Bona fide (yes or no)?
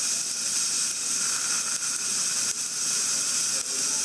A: yes